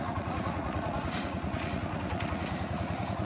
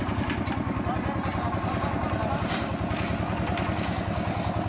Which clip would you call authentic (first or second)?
second